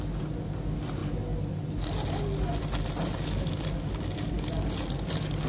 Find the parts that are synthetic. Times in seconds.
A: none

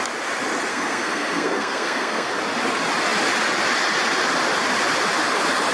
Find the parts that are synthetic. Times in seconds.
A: 0.7-2.3 (codec, SNAC)

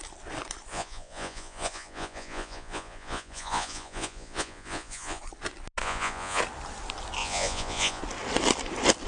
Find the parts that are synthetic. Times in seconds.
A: 0.7-5.2 (vocoder, Vocos); 5.8-6.4; 7.2-8.0

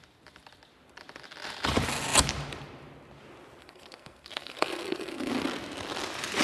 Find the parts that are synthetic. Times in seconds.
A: 3.6-5.3 (codec, SNAC)

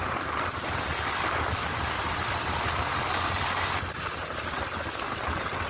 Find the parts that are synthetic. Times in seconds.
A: none

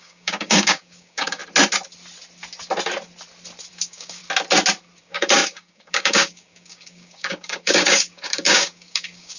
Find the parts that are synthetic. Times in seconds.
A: 0.0-1.4 (codec, DAC); 3.7-4.2; 5.0-9.4

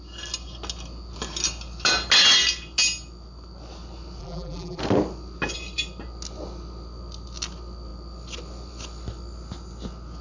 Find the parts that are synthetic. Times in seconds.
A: 4.2-4.8 (vocoder, BigVGAN v2)

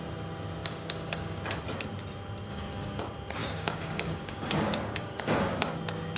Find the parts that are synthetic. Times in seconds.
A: 0.6-1.4 (codec, DAC); 2.5-3.0; 3.4-5.8